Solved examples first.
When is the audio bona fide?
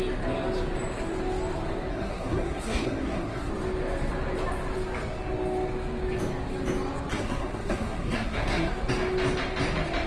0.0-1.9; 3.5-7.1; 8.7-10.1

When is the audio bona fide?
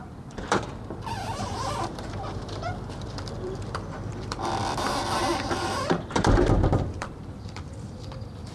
none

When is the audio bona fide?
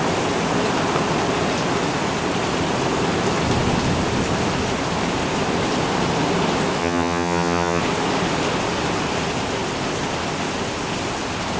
0.0-6.8; 7.8-11.6